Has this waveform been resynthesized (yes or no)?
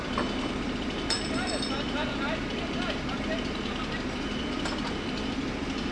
yes